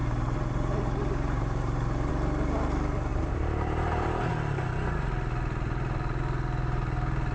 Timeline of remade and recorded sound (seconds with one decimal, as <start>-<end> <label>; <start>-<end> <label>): 0.0-2.1 remade; 2.1-3.1 recorded; 3.1-4.3 remade; 4.3-7.3 recorded